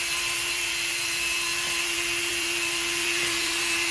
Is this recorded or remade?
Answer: remade